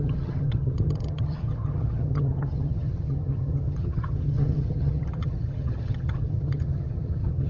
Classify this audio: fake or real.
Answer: fake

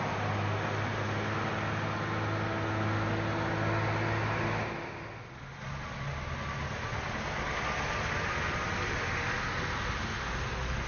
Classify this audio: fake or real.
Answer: real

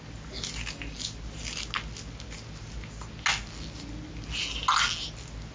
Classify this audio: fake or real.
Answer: real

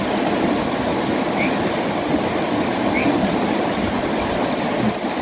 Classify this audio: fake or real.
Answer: real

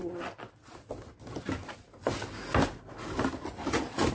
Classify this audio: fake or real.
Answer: real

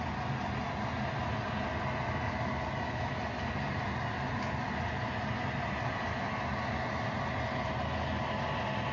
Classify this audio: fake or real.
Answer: real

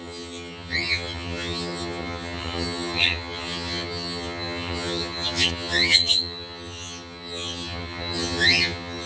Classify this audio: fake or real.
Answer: fake